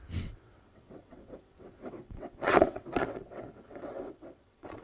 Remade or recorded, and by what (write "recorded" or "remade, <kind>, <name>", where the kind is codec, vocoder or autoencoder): remade, vocoder, WaveNeXt